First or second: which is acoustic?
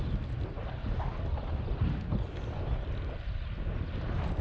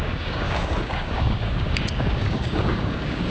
first